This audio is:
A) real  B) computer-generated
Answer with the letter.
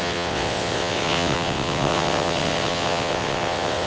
B